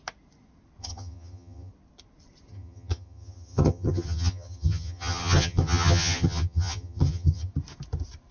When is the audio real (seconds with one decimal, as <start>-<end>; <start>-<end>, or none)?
0.0-0.8; 1.7-2.5; 7.5-8.3